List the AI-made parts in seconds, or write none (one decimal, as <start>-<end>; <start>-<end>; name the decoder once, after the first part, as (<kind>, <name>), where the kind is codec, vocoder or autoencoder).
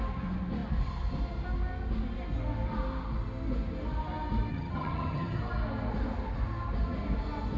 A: 4.5-5.4 (vocoder, HiFi-GAN)